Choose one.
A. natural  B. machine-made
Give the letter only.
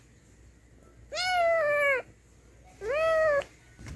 A